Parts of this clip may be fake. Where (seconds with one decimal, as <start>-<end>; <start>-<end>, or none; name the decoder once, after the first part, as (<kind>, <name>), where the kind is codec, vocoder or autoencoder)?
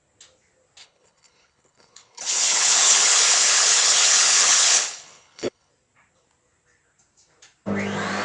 0.8-5.7 (codec, HILCodec)